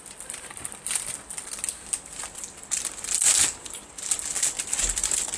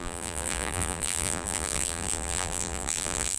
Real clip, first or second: first